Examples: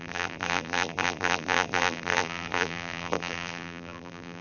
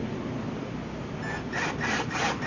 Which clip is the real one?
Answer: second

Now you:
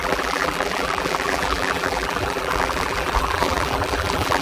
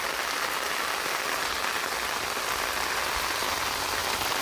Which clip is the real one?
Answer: second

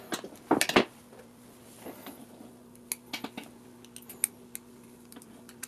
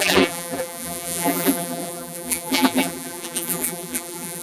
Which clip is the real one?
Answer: first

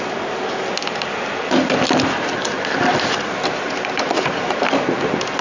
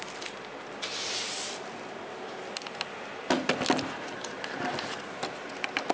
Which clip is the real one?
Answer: second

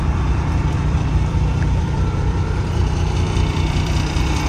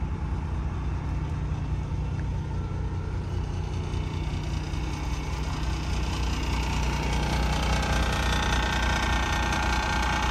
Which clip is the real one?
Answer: second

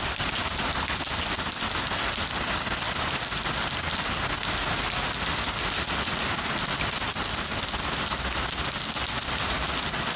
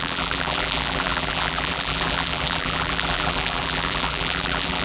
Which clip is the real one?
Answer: first